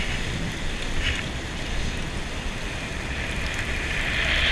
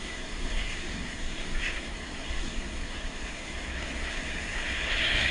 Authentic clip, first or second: first